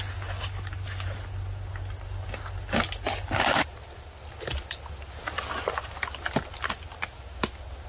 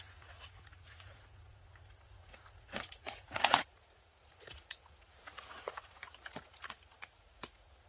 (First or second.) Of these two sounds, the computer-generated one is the second